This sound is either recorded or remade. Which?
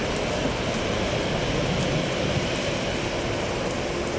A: recorded